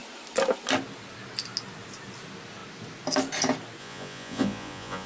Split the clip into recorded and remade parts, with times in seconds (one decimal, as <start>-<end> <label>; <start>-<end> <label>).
0.0-3.8 recorded; 3.8-5.1 remade